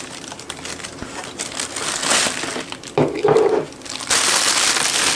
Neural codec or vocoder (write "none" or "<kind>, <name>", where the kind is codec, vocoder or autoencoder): none